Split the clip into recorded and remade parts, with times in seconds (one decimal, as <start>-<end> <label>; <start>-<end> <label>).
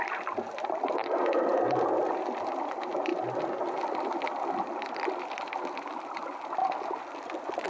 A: 0.0-7.7 recorded